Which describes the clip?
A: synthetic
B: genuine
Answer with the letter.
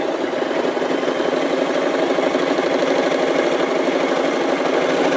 B